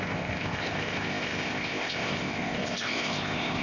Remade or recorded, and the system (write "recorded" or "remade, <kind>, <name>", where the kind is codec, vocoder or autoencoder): remade, codec, ZipCodec